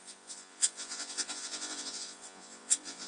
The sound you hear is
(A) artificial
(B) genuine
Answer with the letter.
A